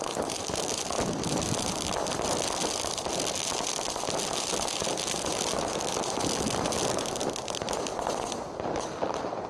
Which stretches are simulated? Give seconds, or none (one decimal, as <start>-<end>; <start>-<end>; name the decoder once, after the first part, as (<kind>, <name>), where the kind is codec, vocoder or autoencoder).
none